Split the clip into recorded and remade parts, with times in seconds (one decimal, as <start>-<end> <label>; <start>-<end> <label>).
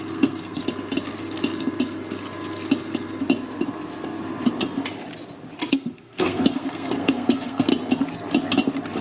0.0-0.6 remade; 0.6-5.7 recorded; 5.7-7.7 remade; 7.7-9.0 recorded